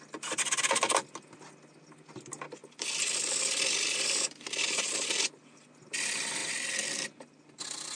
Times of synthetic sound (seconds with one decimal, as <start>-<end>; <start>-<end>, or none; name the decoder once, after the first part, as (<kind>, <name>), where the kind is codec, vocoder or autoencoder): 2.6-5.3 (vocoder, BigVGAN v2)